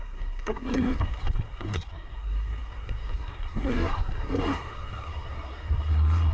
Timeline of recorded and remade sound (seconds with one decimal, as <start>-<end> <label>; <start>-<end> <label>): 0.0-6.3 remade